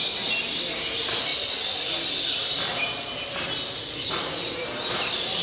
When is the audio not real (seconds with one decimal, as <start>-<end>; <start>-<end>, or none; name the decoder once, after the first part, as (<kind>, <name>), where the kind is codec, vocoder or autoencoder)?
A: none